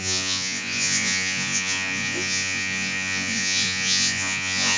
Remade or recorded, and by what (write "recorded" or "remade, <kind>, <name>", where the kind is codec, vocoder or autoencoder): remade, vocoder, Vocos